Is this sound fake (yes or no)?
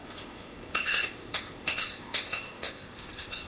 yes